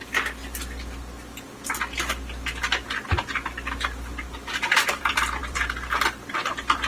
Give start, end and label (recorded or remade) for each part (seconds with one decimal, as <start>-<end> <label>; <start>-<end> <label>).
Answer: 0.0-0.4 remade; 0.4-4.5 recorded; 4.5-6.9 remade